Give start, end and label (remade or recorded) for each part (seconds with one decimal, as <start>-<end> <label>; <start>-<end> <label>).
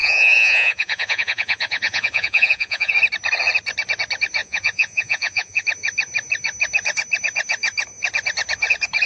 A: 0.0-2.9 remade; 2.9-4.4 recorded; 4.4-5.6 remade; 5.6-9.1 recorded